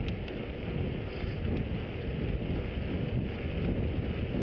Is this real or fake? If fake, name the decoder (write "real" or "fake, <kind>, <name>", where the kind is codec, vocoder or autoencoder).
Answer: real